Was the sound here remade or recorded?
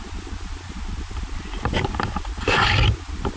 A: recorded